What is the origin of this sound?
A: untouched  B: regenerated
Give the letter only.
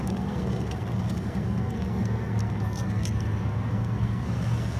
B